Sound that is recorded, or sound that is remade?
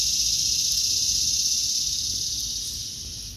recorded